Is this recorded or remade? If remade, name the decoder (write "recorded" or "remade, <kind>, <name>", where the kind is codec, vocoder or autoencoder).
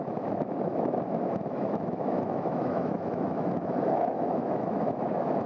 remade, autoencoder, DAC-VAE